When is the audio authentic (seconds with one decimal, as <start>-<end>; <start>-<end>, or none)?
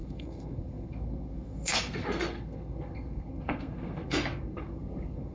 none